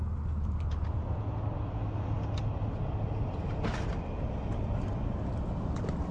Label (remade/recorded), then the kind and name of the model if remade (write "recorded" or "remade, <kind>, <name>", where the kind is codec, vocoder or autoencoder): recorded